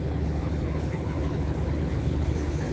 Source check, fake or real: fake